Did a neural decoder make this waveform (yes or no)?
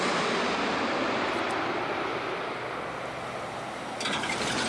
no